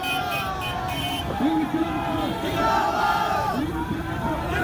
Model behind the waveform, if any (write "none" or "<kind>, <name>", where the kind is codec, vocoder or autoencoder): vocoder, BigVGAN v2